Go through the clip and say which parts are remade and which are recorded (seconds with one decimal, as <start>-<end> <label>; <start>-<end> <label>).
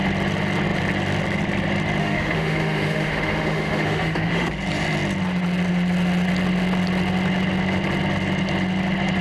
0.0-2.0 recorded; 2.0-4.5 remade; 4.5-9.2 recorded